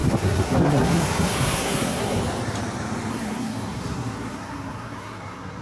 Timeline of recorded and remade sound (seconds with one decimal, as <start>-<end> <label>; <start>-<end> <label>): 0.0-2.2 remade; 2.2-3.1 recorded; 3.1-5.6 remade